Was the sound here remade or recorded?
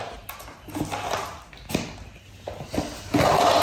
recorded